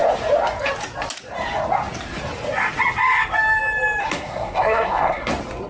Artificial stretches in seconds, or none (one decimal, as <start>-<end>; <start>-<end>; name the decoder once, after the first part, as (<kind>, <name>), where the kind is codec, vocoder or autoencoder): 4.0-5.3 (codec, SNAC)